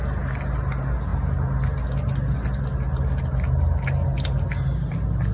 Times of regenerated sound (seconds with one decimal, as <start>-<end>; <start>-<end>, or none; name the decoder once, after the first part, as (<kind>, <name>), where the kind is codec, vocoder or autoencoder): none